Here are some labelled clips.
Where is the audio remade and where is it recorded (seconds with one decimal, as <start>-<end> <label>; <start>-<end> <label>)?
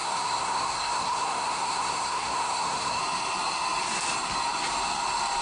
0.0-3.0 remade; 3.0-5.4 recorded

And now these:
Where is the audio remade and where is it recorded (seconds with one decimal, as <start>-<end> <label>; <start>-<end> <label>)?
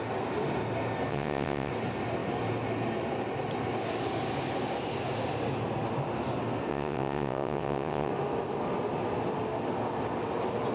0.0-1.1 recorded; 1.1-1.7 remade; 1.7-6.7 recorded; 6.7-8.1 remade; 8.1-10.7 recorded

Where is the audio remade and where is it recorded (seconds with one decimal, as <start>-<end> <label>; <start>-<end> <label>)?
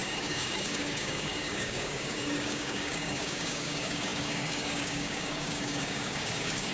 0.0-6.7 remade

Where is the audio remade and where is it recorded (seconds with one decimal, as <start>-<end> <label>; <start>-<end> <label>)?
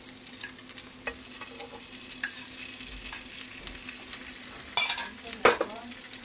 0.0-6.2 recorded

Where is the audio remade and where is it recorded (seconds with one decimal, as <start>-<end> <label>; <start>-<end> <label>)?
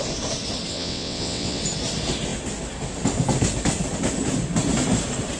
0.0-0.7 recorded; 0.7-1.6 remade; 1.6-5.4 recorded